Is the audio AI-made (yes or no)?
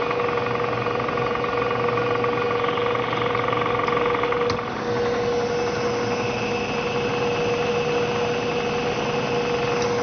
no